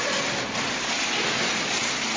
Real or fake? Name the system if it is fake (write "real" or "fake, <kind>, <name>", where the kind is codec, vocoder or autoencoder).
real